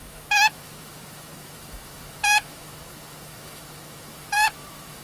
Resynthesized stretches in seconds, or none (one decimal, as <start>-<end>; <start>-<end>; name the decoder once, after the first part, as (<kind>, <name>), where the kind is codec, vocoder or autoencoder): 0.0-5.0 (autoencoder, DAC-VAE)

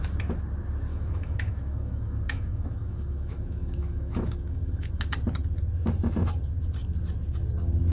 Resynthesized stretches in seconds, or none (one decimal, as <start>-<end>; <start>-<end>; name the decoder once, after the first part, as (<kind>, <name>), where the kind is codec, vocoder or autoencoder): 0.9-4.9 (autoencoder, DAC-VAE)

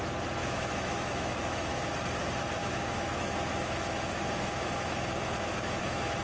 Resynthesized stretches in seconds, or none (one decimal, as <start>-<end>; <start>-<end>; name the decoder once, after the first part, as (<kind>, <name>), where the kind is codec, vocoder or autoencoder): 0.4-1.9 (autoencoder, DAC-VAE); 2.6-6.2

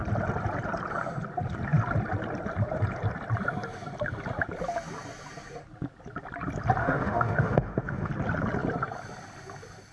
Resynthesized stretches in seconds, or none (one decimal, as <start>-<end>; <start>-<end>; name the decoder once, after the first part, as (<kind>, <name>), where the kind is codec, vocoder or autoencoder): 6.8-8.1 (autoencoder, DAC-VAE)

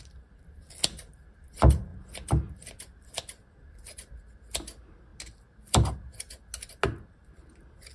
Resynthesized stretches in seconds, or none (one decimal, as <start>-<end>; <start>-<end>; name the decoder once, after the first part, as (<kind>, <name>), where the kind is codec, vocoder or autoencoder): none